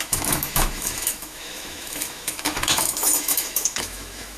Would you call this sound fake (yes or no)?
yes